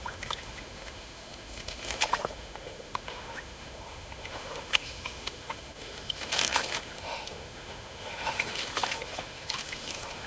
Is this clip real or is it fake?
fake